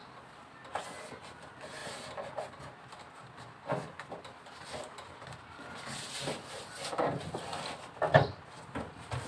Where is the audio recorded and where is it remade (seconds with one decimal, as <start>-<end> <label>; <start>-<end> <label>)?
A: 0.0-9.3 recorded